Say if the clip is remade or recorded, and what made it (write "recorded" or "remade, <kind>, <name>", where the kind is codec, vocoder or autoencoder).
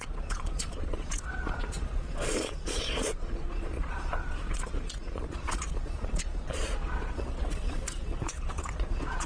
remade, vocoder, Vocos